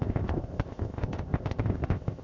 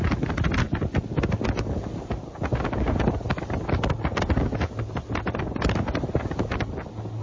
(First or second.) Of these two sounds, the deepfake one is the first